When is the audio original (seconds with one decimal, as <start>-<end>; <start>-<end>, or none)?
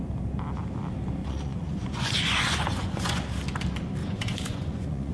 0.0-1.2; 3.2-4.0